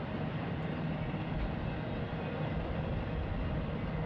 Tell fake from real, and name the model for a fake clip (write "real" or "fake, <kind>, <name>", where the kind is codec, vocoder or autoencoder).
real